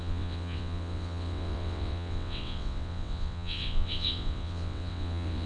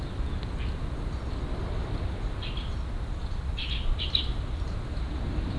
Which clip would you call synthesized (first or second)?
first